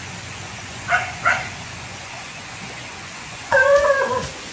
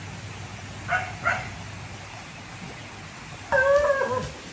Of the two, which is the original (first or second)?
second